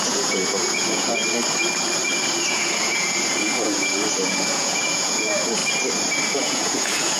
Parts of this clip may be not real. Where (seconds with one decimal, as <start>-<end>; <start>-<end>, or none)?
0.0-1.2; 2.5-5.6; 6.4-7.2